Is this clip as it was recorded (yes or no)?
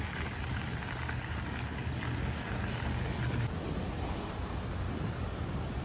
yes